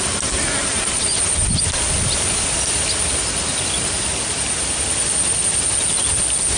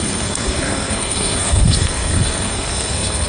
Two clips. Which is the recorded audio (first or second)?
first